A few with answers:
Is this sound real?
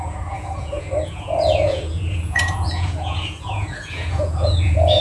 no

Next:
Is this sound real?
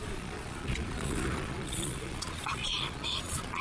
no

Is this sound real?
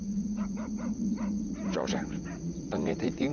no